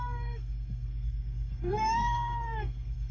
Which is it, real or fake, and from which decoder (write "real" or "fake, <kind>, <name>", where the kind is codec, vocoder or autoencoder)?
fake, codec, SNAC